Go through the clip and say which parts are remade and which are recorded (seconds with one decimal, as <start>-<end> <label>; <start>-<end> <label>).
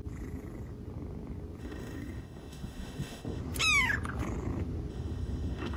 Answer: 0.0-1.6 recorded; 1.6-3.4 remade; 3.4-4.9 recorded; 4.9-5.8 remade